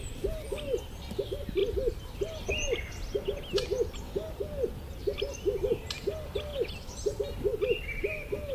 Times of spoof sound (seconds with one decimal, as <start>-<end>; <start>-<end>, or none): none